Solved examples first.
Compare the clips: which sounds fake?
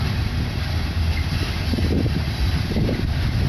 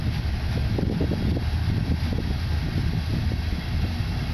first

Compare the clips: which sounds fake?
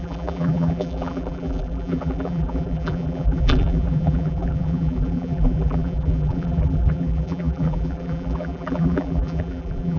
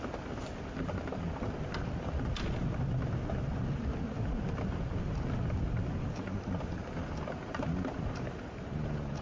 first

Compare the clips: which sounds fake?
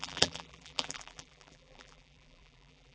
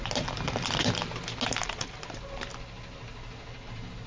first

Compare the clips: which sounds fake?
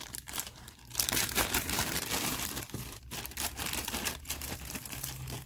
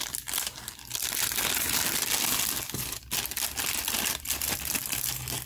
first